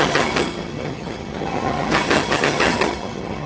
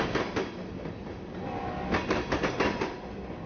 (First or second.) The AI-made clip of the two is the first